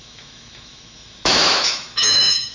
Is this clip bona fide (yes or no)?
no